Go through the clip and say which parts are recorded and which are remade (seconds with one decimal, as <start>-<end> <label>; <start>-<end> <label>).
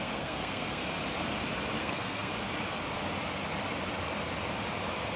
0.0-0.8 remade; 0.8-1.8 recorded; 1.8-2.3 remade; 2.3-5.2 recorded